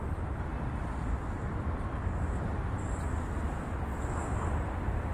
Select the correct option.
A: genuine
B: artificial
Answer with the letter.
A